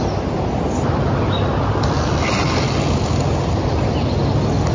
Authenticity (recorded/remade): recorded